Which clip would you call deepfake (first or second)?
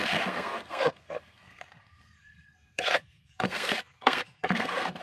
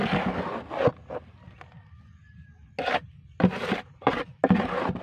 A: first